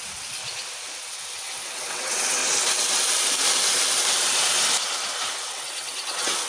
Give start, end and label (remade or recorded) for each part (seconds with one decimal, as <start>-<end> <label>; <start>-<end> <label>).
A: 0.0-0.4 remade; 0.4-1.0 recorded; 1.0-2.4 remade; 2.4-5.5 recorded; 5.5-6.5 remade